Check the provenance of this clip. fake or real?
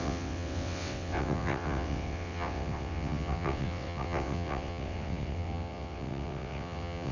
fake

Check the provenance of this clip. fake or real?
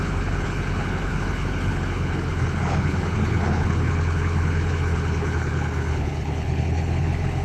fake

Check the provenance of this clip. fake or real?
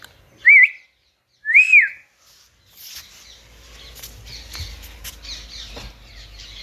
real